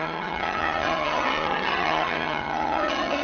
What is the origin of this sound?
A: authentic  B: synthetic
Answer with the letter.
B